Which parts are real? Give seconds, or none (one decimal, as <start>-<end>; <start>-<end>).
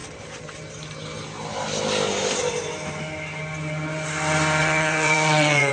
0.0-4.6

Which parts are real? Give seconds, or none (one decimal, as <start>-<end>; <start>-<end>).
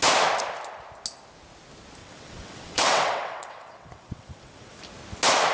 0.0-2.0; 4.8-5.5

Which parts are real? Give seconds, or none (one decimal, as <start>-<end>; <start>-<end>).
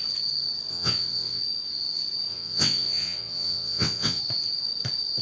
0.0-0.7; 1.4-2.3; 4.2-5.2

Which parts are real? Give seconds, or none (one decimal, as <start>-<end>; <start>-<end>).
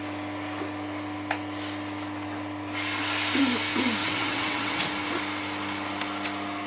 0.0-4.0; 4.8-6.7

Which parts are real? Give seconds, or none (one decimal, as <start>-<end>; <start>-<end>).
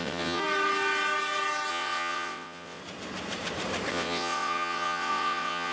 0.4-1.7; 2.8-3.9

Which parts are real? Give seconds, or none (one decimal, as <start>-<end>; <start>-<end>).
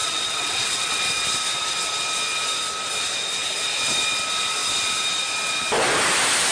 1.0-6.5